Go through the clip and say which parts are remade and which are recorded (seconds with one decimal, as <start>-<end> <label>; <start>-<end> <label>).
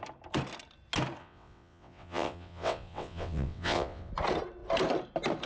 0.0-1.2 recorded; 1.2-4.1 remade; 4.1-5.5 recorded